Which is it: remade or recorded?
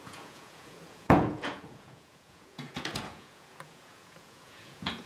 remade